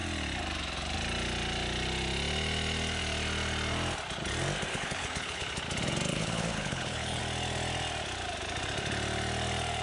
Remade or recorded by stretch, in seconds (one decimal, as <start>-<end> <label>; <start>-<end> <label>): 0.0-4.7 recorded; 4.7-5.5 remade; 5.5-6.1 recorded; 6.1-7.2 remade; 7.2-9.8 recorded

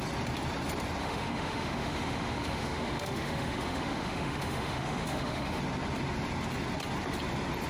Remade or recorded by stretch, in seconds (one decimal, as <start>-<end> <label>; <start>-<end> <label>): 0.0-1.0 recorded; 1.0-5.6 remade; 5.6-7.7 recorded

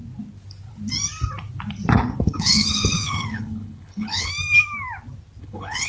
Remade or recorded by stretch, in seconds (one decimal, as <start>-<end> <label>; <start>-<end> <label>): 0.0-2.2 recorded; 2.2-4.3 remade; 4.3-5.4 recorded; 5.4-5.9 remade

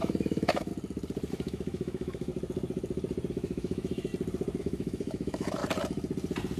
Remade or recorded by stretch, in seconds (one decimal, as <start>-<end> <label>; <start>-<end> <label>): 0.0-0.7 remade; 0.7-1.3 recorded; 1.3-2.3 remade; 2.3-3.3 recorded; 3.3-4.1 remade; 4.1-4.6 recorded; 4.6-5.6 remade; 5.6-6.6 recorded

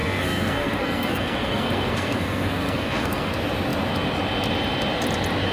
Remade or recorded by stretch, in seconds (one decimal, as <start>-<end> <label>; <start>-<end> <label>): 0.0-3.3 remade; 3.3-5.5 recorded